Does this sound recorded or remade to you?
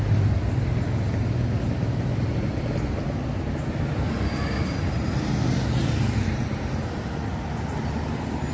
recorded